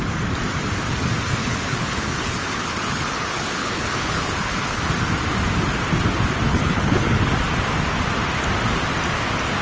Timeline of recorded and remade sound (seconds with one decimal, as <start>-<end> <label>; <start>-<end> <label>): 0.0-1.4 recorded; 1.4-4.8 remade; 4.8-6.5 recorded; 6.5-7.3 remade; 7.3-9.6 recorded